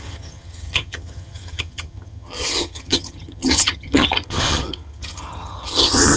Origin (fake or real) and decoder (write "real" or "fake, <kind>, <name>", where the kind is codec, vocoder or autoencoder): fake, vocoder, HiFi-GAN